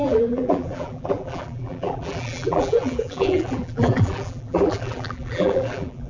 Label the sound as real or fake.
fake